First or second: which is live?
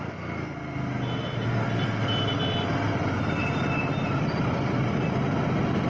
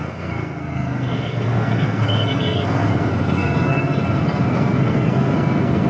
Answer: first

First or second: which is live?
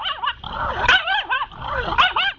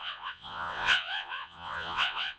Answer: first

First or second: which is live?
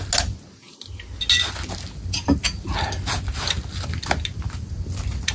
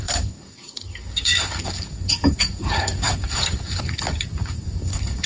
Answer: first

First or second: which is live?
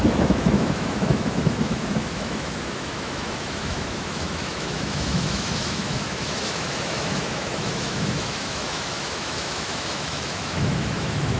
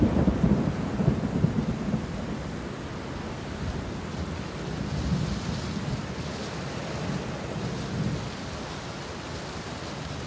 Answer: second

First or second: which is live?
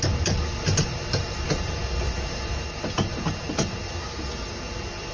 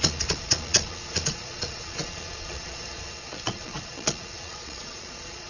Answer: first